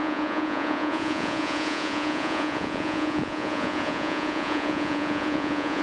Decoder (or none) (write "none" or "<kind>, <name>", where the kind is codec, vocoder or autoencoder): vocoder, Vocos